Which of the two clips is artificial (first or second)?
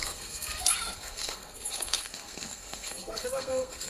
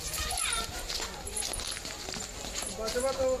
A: first